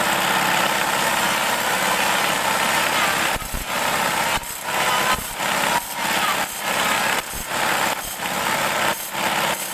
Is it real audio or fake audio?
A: real